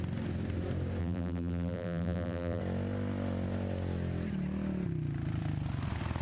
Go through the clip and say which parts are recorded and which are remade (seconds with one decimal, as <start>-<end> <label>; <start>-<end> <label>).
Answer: 0.0-1.0 recorded; 1.0-2.6 remade; 2.6-6.2 recorded